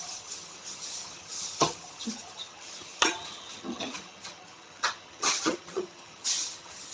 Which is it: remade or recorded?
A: remade